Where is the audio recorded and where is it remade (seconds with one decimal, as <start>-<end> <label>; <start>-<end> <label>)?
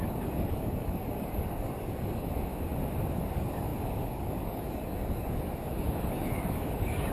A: 0.0-2.5 remade; 2.5-3.1 recorded; 3.1-7.1 remade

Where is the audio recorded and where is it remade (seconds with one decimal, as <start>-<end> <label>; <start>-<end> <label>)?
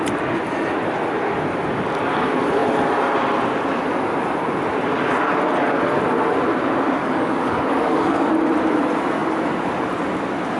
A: 0.0-7.0 recorded; 7.0-8.3 remade; 8.3-10.6 recorded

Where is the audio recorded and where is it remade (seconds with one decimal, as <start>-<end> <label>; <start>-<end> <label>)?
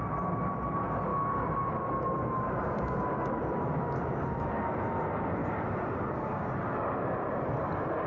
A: 0.0-8.1 recorded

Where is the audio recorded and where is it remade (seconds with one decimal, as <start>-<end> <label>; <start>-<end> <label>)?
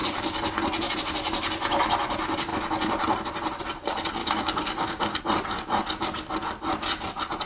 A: 0.0-4.2 recorded; 4.2-5.2 remade; 5.2-7.5 recorded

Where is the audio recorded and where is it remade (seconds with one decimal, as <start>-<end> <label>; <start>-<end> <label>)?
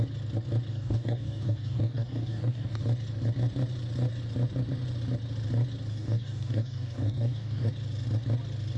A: 0.0-0.7 recorded; 0.7-2.8 remade; 2.8-5.9 recorded; 5.9-7.7 remade; 7.7-8.8 recorded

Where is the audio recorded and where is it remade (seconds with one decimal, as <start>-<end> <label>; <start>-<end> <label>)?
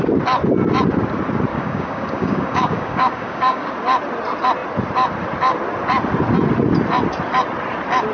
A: 0.0-1.5 recorded; 1.5-3.7 remade; 3.7-8.1 recorded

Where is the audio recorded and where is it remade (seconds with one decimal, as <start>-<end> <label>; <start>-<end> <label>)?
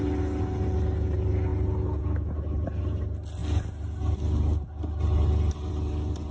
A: 0.0-6.3 recorded